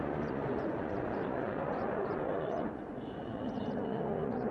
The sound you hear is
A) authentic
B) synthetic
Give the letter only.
B